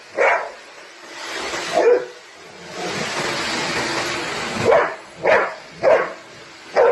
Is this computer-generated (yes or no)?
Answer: no